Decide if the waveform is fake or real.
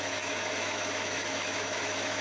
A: fake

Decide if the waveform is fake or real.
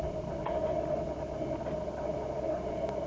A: real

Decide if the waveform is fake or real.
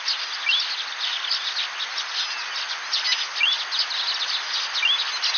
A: real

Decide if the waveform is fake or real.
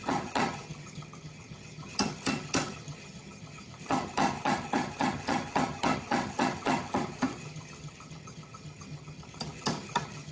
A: fake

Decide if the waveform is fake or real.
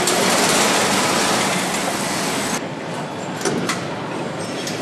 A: real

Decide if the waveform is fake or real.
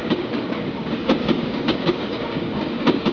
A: fake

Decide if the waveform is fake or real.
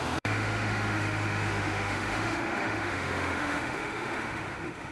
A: fake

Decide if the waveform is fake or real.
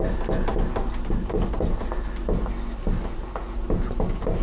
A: real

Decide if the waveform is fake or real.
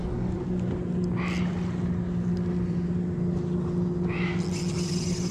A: real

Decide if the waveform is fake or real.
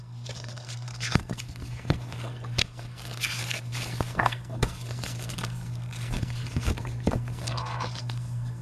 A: fake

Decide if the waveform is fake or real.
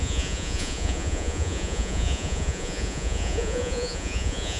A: fake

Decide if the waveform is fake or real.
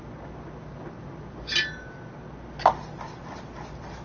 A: real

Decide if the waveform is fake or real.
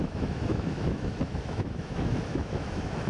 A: fake